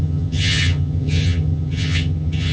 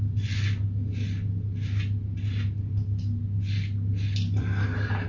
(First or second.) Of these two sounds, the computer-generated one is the first